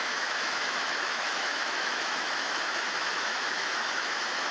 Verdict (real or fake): fake